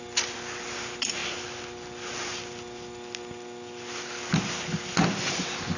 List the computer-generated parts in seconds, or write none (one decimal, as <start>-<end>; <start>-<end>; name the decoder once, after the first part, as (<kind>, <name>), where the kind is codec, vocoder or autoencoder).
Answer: none